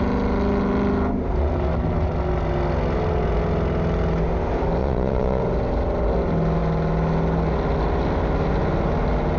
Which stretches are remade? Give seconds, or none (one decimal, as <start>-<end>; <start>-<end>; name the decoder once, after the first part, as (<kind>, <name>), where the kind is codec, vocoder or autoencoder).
4.8-5.4 (vocoder, Vocos)